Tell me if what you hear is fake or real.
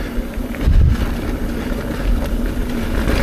real